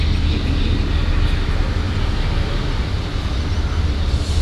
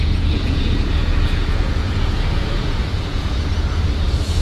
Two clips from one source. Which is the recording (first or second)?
first